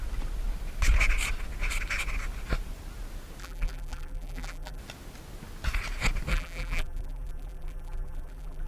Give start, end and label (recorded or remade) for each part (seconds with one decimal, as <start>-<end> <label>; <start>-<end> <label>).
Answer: 0.0-3.4 recorded; 3.4-4.8 remade; 4.8-6.3 recorded; 6.3-8.7 remade